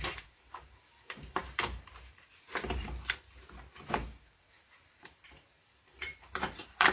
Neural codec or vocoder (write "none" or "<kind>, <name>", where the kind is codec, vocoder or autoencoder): vocoder, BigVGAN v2